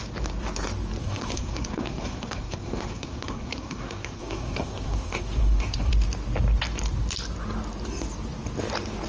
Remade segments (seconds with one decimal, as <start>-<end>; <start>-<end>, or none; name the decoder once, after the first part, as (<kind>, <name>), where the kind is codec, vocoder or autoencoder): 1.0-5.9 (codec, SNAC)

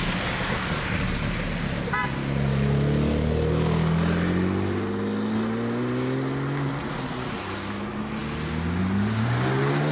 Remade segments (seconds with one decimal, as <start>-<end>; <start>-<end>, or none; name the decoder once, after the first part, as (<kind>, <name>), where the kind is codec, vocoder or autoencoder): none

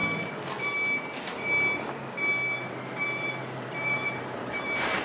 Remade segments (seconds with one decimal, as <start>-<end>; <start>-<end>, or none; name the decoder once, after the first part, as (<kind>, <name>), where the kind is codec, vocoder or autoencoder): 3.0-5.0 (vocoder, BigVGAN v2)